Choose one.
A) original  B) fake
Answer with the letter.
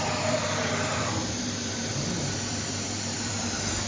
B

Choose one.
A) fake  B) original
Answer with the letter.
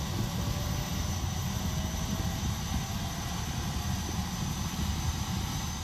B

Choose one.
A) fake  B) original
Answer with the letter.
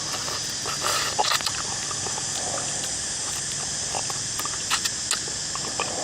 B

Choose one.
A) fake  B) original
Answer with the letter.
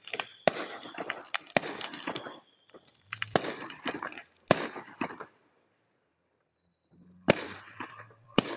A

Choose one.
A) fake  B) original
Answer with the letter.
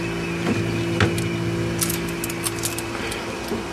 B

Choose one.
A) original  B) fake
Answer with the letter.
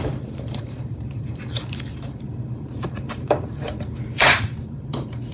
B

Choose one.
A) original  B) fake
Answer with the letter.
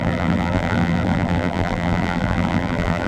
B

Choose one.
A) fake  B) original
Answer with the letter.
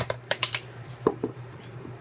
A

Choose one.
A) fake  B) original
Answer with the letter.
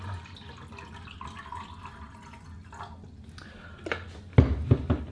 B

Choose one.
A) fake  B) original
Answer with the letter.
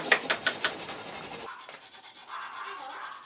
B